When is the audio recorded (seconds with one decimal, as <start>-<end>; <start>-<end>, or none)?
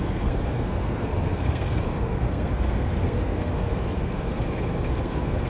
none